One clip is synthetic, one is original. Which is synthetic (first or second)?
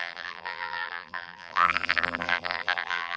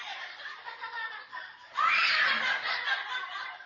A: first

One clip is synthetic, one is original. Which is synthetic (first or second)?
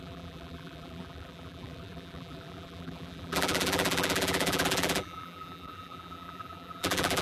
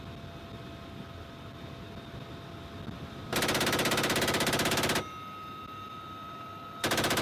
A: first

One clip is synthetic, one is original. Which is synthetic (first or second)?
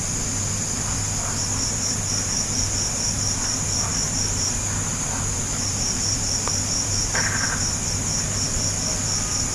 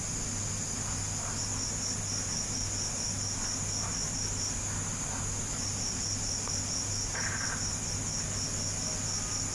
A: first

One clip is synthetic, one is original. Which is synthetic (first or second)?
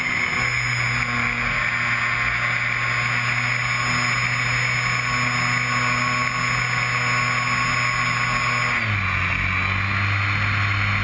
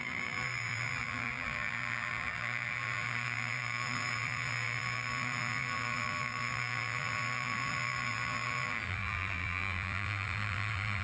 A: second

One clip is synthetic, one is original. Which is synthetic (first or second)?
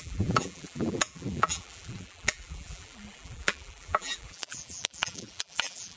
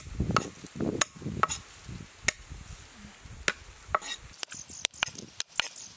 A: first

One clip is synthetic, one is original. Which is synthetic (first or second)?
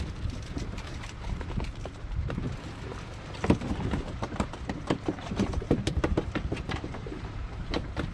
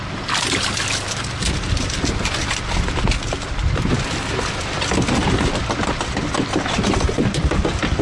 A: first